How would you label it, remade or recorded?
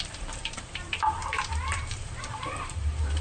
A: remade